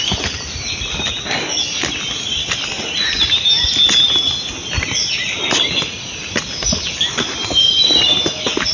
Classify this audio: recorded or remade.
recorded